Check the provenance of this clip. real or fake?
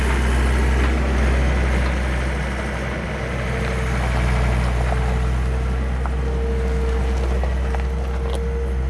real